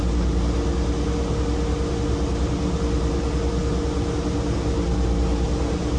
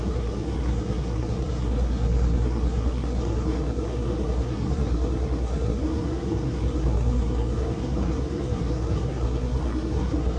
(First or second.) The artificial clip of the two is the second